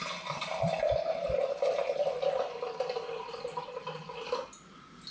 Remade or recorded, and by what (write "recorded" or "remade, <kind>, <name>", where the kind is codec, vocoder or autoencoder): recorded